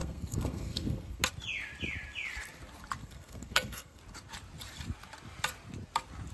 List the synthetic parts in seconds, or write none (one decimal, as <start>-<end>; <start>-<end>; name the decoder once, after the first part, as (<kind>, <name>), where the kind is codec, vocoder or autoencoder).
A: 0.0-1.2 (codec, SNAC); 3.0-4.0